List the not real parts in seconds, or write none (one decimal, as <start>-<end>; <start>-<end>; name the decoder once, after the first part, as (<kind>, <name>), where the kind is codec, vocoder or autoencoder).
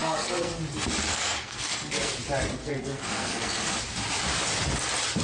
0.0-0.6 (codec, SNAC); 1.1-2.1; 2.6-3.8